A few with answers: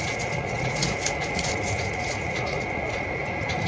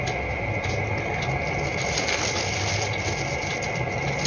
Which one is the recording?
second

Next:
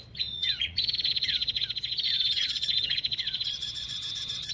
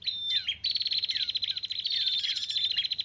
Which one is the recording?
second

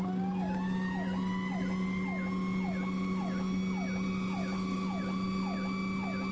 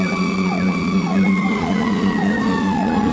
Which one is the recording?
first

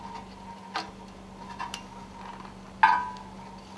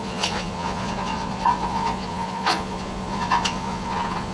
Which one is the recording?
first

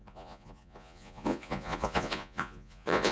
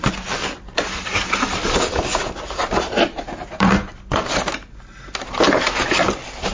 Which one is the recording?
second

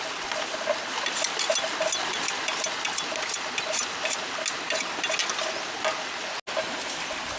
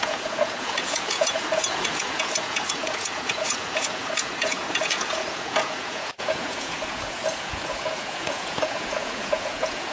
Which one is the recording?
first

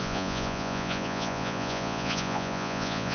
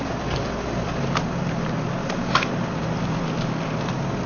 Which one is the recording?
second